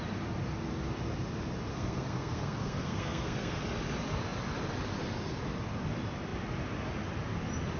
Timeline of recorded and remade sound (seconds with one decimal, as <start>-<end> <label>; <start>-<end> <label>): 0.0-1.7 recorded; 1.7-3.6 remade; 3.6-7.8 recorded